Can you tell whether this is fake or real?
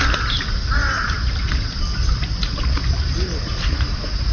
real